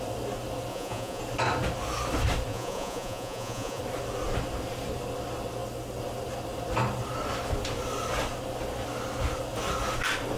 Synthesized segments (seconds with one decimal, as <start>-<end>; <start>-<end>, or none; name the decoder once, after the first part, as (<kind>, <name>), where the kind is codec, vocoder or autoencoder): 0.7-1.2 (vocoder, Vocos); 2.5-3.8